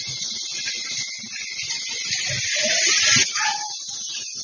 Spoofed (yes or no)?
no